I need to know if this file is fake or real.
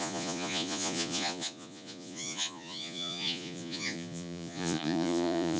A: fake